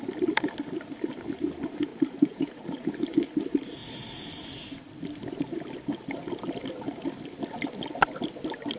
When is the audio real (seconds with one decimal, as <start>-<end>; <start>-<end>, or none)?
0.0-1.9; 2.9-8.8